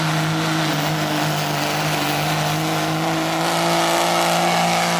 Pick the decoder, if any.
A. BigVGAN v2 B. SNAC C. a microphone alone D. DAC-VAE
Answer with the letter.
C